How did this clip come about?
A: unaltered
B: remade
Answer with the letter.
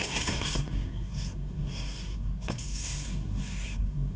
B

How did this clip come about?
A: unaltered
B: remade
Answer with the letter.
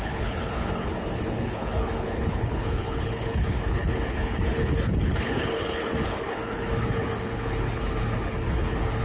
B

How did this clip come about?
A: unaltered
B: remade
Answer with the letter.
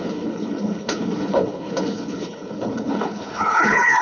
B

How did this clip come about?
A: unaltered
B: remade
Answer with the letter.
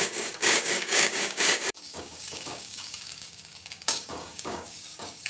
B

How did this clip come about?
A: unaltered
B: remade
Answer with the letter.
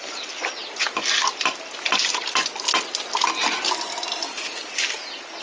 A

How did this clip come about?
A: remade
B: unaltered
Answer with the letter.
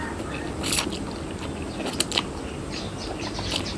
B